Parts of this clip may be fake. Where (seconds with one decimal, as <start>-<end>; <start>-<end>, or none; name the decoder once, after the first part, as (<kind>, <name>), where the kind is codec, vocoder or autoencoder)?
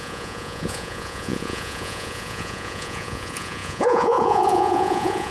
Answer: 0.0-5.3 (vocoder, Vocos)